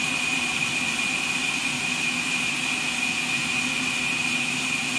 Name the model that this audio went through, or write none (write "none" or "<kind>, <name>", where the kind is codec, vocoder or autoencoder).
none